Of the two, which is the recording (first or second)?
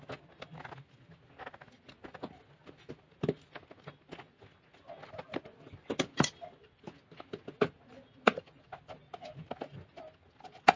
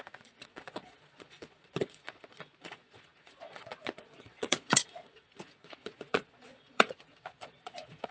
first